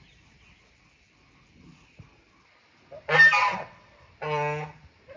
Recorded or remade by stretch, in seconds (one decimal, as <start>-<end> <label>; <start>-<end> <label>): 0.0-3.4 recorded; 3.4-4.1 remade; 4.1-5.2 recorded